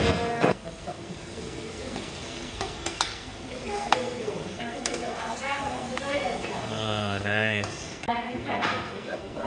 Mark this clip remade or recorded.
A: remade